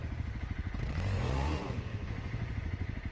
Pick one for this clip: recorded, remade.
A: remade